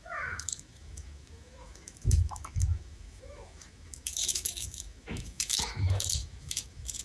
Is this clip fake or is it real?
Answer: fake